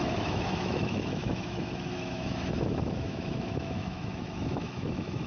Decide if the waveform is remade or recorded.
remade